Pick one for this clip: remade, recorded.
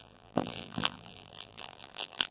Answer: remade